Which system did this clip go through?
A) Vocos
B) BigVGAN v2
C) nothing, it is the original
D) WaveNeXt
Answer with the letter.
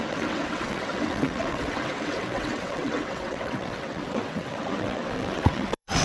D